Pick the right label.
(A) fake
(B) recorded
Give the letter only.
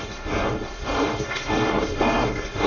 A